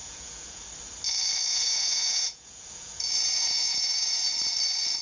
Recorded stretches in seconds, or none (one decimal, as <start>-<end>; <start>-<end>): 0.6-1.5; 4.3-5.0